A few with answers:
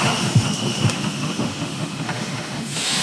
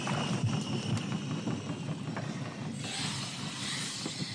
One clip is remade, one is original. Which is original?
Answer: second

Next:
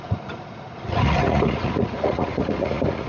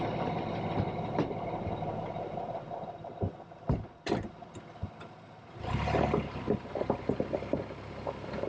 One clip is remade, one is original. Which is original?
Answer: second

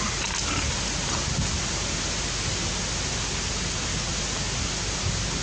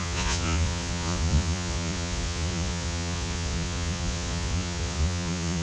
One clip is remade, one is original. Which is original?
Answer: first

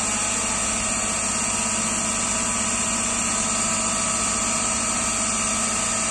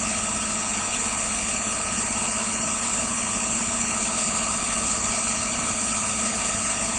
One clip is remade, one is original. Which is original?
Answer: first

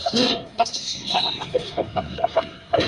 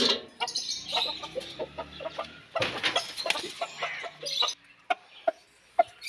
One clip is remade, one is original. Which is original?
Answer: second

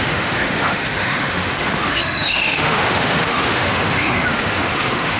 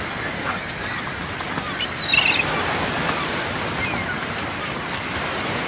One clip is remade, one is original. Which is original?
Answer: second